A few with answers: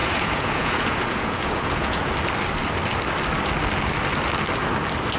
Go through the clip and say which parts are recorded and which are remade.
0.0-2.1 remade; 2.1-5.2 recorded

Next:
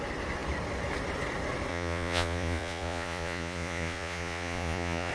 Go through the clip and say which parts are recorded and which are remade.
0.0-1.7 recorded; 1.7-5.1 remade

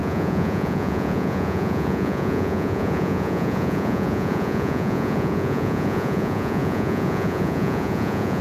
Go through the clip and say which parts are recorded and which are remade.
0.0-8.4 remade

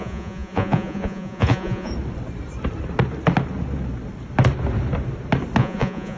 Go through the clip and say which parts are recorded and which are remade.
0.0-1.9 remade; 1.9-5.6 recorded; 5.6-6.2 remade

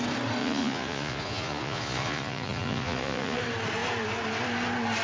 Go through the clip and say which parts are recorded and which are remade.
0.0-0.4 recorded; 0.4-3.4 remade; 3.4-5.0 recorded

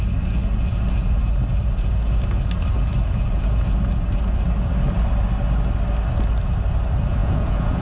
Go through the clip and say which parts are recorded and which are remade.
0.0-7.2 recorded; 7.2-7.8 remade

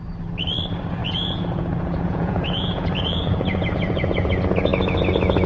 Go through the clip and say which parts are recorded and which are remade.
0.0-1.0 recorded; 1.0-4.3 remade; 4.3-5.5 recorded

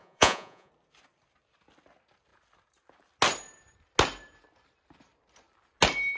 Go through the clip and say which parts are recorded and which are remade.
0.0-0.7 remade; 0.7-6.2 recorded